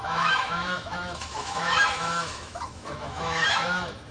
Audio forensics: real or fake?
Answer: fake